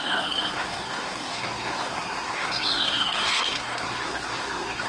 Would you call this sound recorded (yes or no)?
no